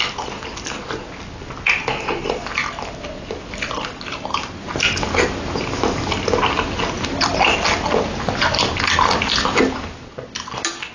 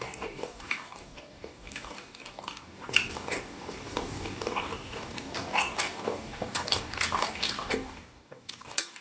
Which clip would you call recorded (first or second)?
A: first